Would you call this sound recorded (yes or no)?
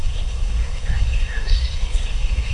no